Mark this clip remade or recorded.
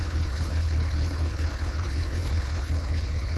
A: remade